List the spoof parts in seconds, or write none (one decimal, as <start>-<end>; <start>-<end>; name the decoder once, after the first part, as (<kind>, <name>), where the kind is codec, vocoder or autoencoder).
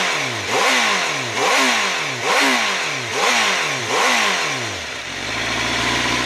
none